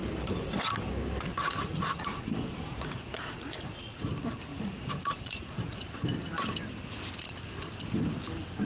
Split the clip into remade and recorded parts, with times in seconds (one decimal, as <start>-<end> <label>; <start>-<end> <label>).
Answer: 0.0-1.4 recorded; 1.4-4.1 remade; 4.1-4.5 recorded; 4.5-5.8 remade; 5.8-8.7 recorded

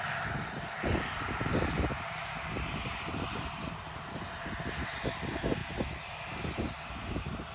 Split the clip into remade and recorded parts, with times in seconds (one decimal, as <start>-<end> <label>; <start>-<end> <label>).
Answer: 0.0-7.5 recorded

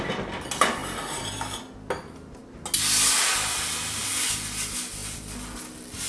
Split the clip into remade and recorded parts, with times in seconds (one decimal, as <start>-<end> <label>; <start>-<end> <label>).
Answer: 0.0-6.1 recorded

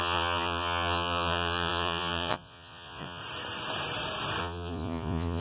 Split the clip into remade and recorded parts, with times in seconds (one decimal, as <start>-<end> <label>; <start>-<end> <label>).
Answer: 0.0-3.2 remade; 3.2-4.4 recorded; 4.4-5.4 remade